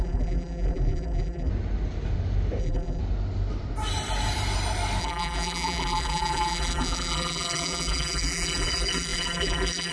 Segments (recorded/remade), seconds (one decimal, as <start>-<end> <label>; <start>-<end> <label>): 0.0-1.5 remade; 1.5-2.6 recorded; 2.6-3.0 remade; 3.0-5.0 recorded; 5.0-9.9 remade